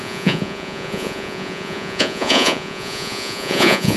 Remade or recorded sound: remade